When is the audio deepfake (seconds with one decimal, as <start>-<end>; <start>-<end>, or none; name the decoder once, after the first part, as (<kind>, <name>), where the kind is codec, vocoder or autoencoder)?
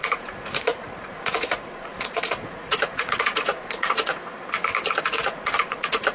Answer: 0.0-4.2 (vocoder, Vocos); 5.0-6.1